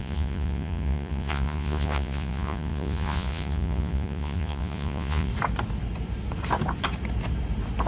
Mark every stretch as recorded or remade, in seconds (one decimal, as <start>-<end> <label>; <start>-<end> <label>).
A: 0.0-5.3 remade; 5.3-7.9 recorded